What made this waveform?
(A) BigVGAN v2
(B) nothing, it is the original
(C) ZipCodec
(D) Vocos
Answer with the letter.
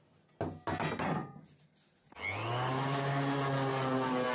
B